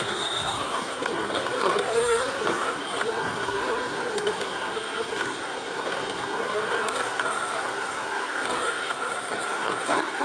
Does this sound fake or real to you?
fake